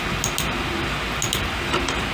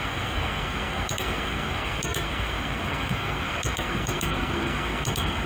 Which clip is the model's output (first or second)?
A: second